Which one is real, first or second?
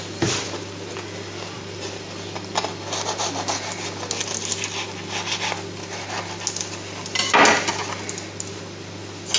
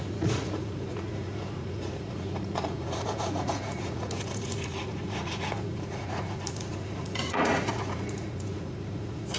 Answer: first